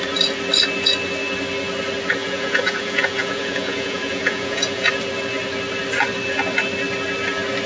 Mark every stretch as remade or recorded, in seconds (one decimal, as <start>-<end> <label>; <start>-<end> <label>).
0.0-2.2 recorded; 2.2-4.9 remade; 4.9-7.7 recorded